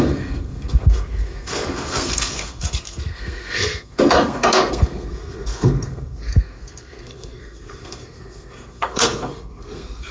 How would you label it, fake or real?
fake